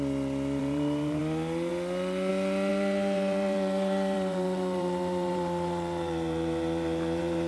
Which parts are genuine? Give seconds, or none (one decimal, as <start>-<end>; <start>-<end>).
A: 0.0-0.6; 1.2-2.7